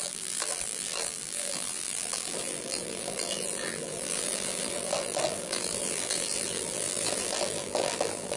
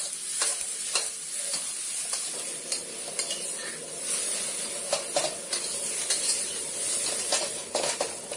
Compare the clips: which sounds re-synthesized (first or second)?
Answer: first